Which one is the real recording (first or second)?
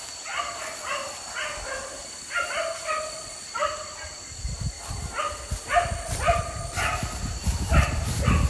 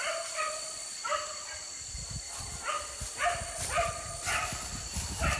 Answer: first